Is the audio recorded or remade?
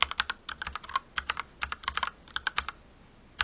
recorded